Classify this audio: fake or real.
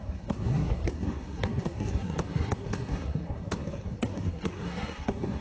fake